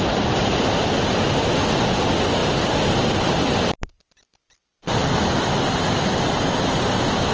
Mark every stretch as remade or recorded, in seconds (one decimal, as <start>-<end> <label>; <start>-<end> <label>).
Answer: 0.0-7.3 recorded